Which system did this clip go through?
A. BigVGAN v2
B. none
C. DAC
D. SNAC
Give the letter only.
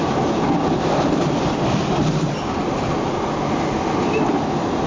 B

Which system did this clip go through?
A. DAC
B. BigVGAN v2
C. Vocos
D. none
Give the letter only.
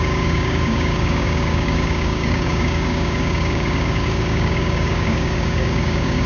A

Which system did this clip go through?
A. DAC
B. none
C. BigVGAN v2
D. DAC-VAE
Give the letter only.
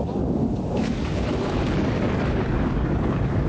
A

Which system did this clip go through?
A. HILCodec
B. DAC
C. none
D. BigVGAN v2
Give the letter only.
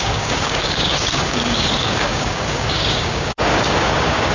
B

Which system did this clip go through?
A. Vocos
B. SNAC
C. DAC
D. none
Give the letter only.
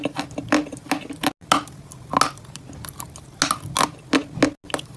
D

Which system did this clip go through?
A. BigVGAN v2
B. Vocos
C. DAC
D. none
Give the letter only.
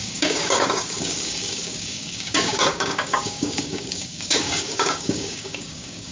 C